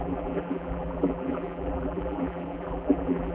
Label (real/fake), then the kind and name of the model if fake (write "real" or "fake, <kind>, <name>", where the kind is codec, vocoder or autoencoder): fake, vocoder, BigVGAN v2